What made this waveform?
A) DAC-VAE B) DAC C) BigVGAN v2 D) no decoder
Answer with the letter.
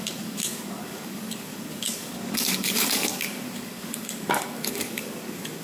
B